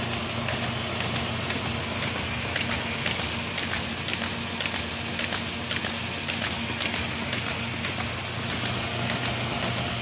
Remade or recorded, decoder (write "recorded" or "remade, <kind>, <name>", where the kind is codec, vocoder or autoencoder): recorded